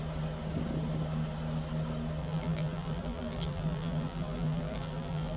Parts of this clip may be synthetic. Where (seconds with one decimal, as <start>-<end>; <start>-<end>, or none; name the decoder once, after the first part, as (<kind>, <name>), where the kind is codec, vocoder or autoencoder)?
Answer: 2.2-5.4 (vocoder, BigVGAN v2)